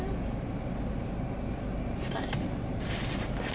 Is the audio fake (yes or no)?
no